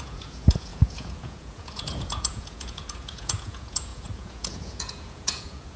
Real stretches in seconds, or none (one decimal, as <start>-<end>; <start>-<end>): none